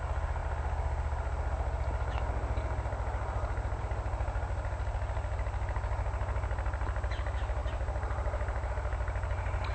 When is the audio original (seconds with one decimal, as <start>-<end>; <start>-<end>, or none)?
0.0-9.7